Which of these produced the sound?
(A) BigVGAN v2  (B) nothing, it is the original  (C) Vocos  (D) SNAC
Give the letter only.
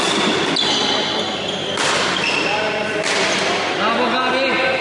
B